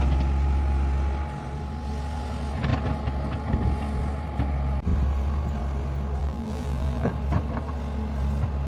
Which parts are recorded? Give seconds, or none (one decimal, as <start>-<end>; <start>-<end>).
0.0-6.2; 7.1-8.7